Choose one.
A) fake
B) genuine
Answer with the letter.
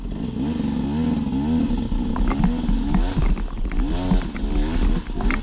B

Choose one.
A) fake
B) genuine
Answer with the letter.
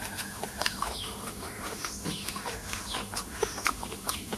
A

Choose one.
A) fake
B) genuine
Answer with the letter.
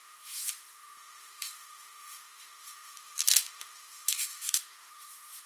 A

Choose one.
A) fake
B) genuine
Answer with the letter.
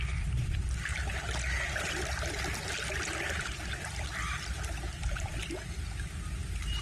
B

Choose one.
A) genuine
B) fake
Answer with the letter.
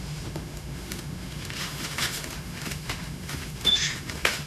B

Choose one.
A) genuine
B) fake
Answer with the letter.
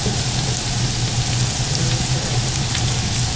A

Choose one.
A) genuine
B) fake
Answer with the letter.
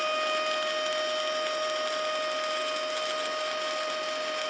A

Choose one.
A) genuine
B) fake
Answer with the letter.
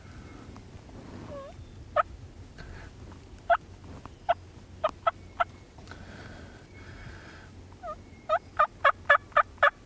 A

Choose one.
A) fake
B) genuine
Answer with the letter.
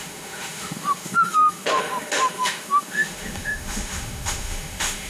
A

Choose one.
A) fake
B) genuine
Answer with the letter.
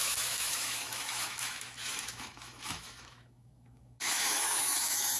A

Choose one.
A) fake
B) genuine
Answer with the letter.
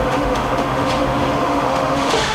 A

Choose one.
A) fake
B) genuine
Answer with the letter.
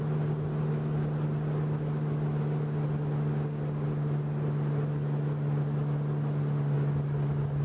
B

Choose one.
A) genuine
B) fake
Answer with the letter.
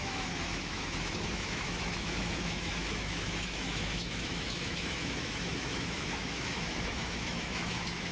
B